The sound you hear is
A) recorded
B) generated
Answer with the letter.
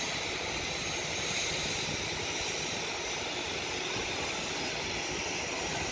A